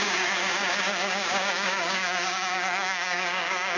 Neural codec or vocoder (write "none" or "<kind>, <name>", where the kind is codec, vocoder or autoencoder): codec, DAC